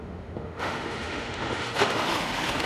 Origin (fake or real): fake